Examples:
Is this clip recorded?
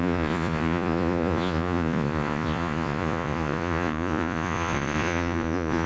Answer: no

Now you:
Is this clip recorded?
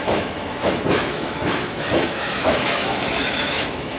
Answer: no